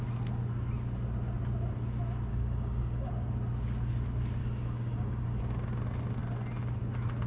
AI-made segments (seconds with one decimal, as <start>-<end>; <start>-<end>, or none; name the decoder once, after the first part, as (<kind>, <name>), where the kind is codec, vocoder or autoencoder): 2.3-3.1 (codec, DAC); 4.4-5.4